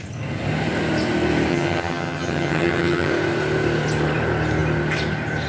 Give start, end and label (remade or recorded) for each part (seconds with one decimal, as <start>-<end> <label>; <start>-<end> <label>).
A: 0.0-1.5 recorded; 1.5-3.1 remade; 3.1-5.5 recorded